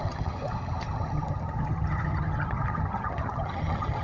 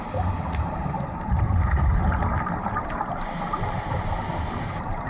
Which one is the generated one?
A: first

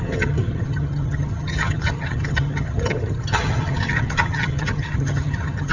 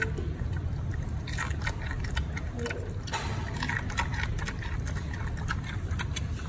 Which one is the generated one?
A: first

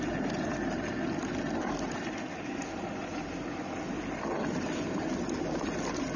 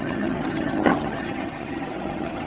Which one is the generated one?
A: second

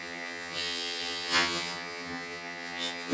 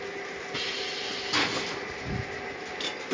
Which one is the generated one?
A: first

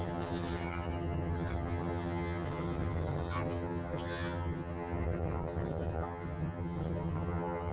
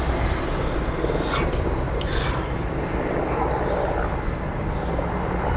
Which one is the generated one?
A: first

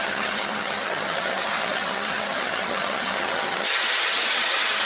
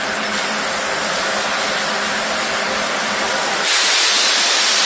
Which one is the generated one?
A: first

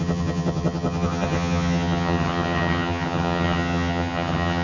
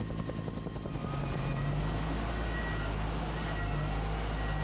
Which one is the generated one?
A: first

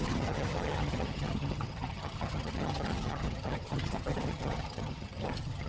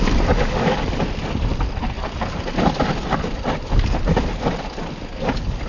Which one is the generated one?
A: first